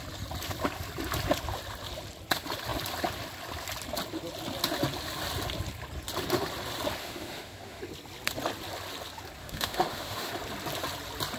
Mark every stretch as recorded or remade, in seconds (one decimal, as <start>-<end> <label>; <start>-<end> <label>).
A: 0.0-7.0 recorded; 7.0-7.8 remade; 7.8-9.4 recorded; 9.4-10.3 remade; 10.3-11.4 recorded